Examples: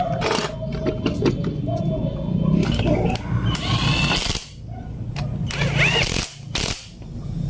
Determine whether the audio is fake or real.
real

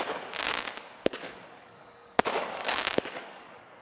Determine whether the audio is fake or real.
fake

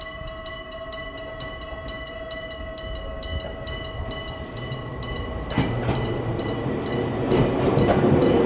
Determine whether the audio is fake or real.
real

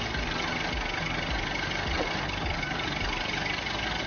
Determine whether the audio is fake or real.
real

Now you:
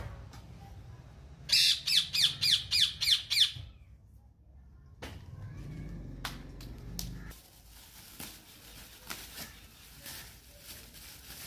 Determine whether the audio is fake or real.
real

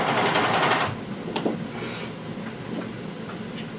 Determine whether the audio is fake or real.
real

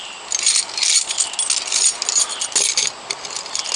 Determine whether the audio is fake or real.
real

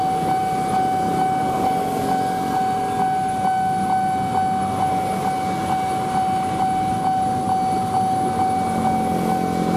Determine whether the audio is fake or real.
real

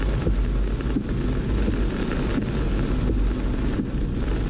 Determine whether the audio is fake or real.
real